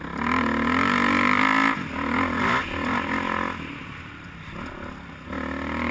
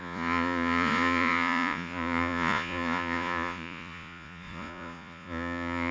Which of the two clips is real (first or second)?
first